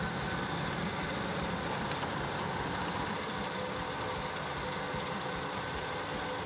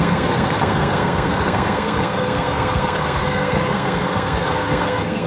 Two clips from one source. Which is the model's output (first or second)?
second